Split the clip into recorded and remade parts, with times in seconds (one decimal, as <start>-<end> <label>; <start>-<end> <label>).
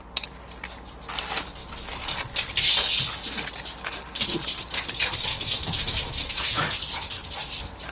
0.0-5.3 recorded; 5.3-6.9 remade; 6.9-7.9 recorded